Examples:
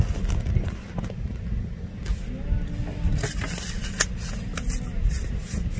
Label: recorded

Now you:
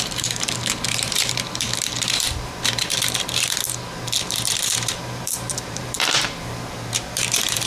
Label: remade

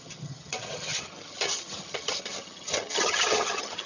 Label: remade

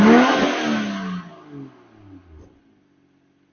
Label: recorded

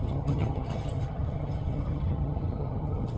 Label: remade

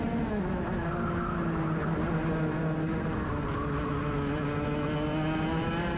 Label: recorded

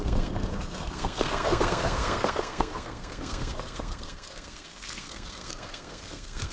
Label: remade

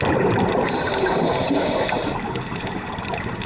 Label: recorded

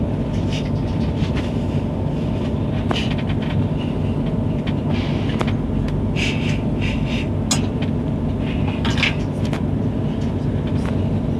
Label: recorded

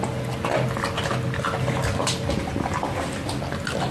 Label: recorded